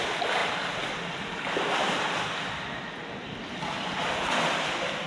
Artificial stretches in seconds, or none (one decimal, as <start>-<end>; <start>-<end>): none